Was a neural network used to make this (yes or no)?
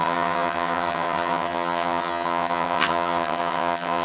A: yes